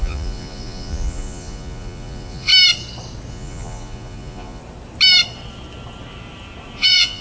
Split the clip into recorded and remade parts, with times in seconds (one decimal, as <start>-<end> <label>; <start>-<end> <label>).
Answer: 0.0-2.5 remade; 2.5-3.3 recorded; 3.3-4.6 remade; 4.6-6.8 recorded; 6.8-7.2 remade